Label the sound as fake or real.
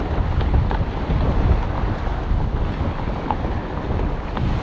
real